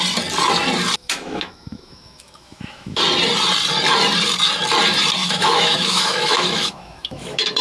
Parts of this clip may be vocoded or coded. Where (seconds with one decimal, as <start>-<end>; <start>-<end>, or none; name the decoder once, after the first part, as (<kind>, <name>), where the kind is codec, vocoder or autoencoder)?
1.0-3.0 (autoencoder, DAC-VAE); 5.2-7.6